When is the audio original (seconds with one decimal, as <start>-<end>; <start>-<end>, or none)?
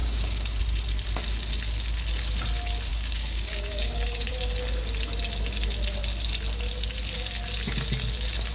0.6-2.9; 4.3-8.5